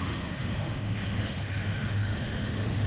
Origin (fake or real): fake